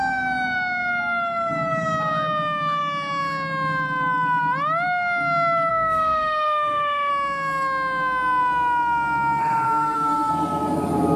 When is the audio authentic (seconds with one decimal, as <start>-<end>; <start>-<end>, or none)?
0.0-5.7; 7.1-9.4; 10.3-11.2